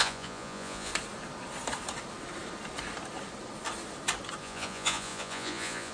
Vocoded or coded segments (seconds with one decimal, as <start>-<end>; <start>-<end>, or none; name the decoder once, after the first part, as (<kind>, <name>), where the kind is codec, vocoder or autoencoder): 0.0-0.9 (vocoder, Vocos); 4.4-5.9